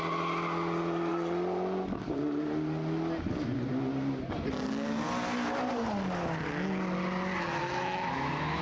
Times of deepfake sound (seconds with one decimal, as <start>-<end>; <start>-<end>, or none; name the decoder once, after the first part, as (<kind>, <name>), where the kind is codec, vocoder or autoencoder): 7.6-8.6 (autoencoder, DAC-VAE)